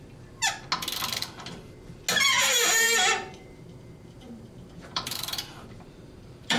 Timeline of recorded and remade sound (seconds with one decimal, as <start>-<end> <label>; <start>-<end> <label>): 0.0-2.4 recorded; 2.4-6.6 remade